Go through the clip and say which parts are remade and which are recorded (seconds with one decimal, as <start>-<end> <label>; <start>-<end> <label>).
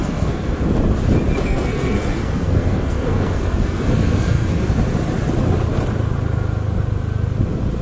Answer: 0.0-0.6 remade; 0.6-1.4 recorded; 1.4-4.8 remade; 4.8-7.8 recorded